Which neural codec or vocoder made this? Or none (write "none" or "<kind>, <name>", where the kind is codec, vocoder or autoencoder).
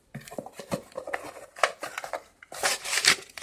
none